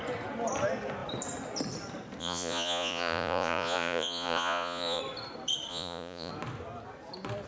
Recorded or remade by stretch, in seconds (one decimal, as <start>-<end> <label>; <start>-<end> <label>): 0.0-2.2 recorded; 2.2-5.0 remade; 5.0-5.7 recorded; 5.7-6.3 remade; 6.3-7.5 recorded